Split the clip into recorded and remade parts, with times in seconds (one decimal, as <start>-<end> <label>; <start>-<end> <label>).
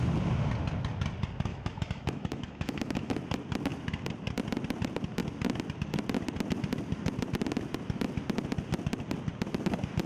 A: 0.0-1.5 recorded; 1.5-3.1 remade; 3.1-10.1 recorded